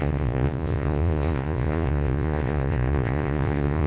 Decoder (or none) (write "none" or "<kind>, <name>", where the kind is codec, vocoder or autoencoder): vocoder, Vocos